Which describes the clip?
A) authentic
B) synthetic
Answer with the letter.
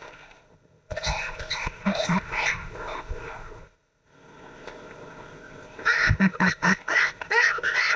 B